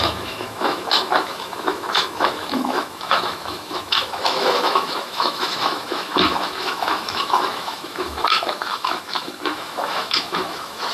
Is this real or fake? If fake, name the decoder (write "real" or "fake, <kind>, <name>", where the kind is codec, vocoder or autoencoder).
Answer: fake, autoencoder, DAC-VAE